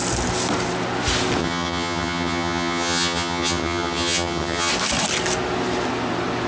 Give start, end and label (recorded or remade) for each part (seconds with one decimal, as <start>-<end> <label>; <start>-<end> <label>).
0.0-1.4 recorded; 1.4-4.7 remade; 4.7-6.5 recorded